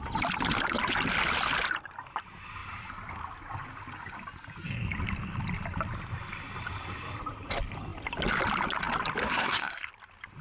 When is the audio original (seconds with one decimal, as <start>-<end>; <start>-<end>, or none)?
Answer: 0.0-9.2; 9.9-10.4